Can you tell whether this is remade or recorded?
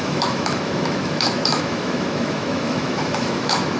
remade